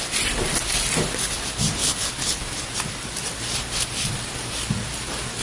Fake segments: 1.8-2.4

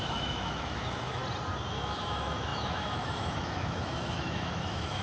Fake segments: 0.0-1.2; 1.7-5.0

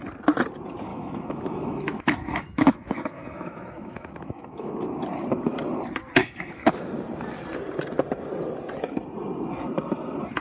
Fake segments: 0.9-4.7; 6.2-6.9